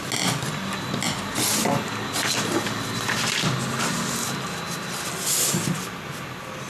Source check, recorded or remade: recorded